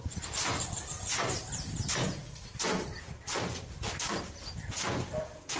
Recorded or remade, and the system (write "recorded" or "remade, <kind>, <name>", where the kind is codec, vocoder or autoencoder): remade, vocoder, BigVGAN v2